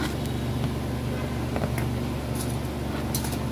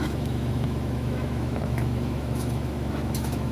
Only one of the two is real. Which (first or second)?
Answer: first